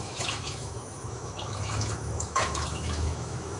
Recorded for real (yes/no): no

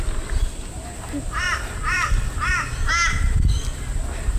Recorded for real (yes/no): yes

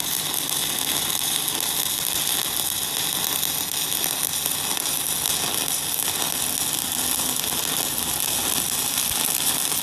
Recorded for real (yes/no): yes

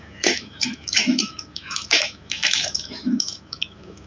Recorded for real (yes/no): no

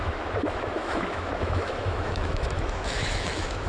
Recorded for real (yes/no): no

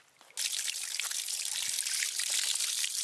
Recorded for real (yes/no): yes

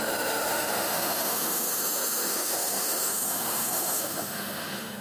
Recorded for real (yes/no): no